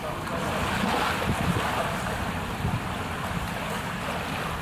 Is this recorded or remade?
recorded